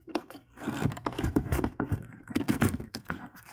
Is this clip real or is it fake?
fake